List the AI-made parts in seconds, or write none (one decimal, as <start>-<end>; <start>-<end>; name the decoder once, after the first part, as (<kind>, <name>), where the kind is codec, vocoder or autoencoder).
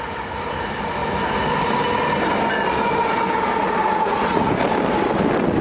3.6-4.5 (vocoder, Vocos)